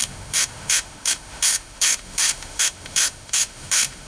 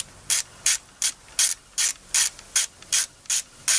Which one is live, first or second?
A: second